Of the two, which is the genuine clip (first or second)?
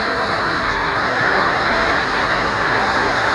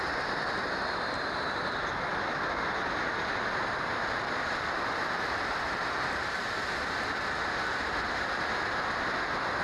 second